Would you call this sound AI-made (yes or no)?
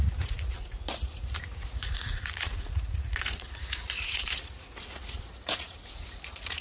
yes